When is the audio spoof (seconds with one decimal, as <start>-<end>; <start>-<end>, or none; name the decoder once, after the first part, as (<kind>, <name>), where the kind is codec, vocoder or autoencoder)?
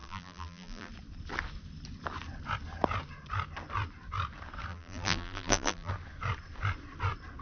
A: 0.0-0.9 (vocoder, BigVGAN v2); 4.7-5.9